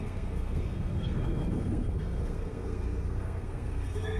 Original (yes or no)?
no